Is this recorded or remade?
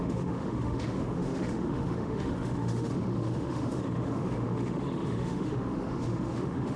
remade